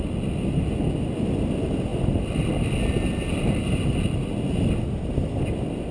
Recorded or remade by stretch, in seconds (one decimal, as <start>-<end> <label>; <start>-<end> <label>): 0.0-5.9 recorded